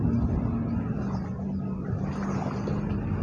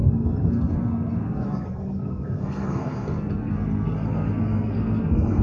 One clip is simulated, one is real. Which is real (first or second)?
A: first